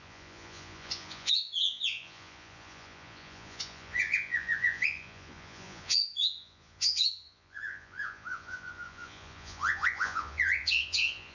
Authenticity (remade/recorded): remade